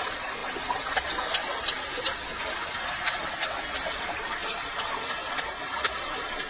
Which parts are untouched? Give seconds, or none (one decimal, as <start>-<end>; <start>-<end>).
0.0-4.4; 5.3-6.5